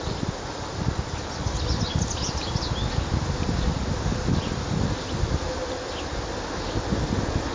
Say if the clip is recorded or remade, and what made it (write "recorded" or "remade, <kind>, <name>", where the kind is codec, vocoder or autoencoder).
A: recorded